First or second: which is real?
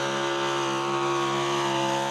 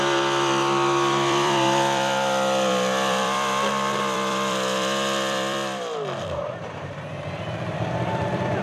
first